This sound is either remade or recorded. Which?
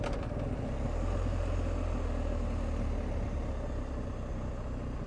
recorded